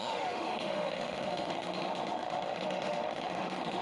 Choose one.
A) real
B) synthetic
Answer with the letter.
B